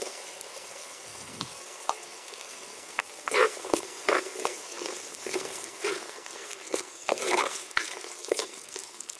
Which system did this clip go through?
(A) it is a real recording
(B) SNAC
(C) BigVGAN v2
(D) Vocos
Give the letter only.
B